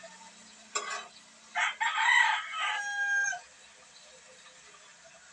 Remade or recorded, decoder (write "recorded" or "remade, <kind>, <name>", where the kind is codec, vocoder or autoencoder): recorded